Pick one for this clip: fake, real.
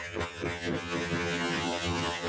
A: fake